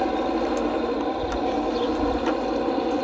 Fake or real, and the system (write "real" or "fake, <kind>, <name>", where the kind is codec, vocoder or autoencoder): real